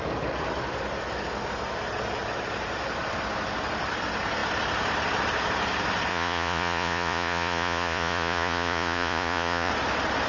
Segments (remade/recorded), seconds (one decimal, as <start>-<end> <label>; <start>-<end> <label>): 0.0-6.1 recorded; 6.1-9.7 remade; 9.7-10.3 recorded

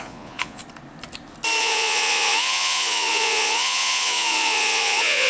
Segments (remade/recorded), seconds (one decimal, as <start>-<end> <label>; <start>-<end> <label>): 0.0-0.6 remade; 0.6-1.6 recorded; 1.6-5.3 remade

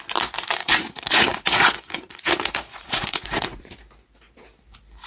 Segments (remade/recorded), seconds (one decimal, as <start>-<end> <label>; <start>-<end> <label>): 0.0-0.6 recorded; 0.6-3.7 remade; 3.7-5.1 recorded

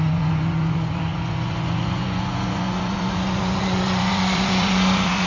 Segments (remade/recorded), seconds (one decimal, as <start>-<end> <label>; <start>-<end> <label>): 0.0-5.3 remade

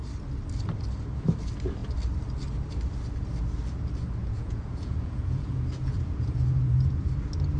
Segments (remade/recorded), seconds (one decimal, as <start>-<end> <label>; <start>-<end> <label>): 0.0-4.2 recorded; 4.2-7.1 remade; 7.1-7.6 recorded

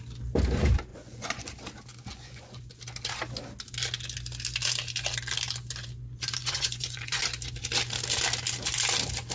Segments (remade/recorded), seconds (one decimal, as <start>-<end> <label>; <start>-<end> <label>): 0.0-0.9 recorded; 0.9-1.5 remade; 1.5-2.1 recorded; 2.1-2.6 remade; 2.6-6.4 recorded; 6.4-7.2 remade; 7.2-9.3 recorded

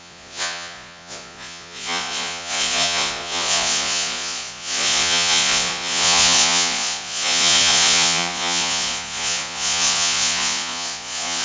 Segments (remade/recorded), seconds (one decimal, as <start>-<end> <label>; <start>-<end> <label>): 0.0-11.4 remade

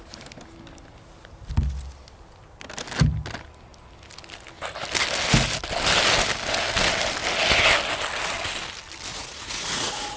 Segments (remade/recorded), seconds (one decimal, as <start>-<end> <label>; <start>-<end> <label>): 0.0-9.1 recorded; 9.1-10.2 remade